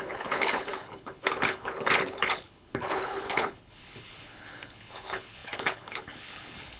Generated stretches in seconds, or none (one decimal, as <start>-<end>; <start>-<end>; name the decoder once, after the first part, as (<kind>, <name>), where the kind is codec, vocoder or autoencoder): 0.0-6.8 (codec, HILCodec)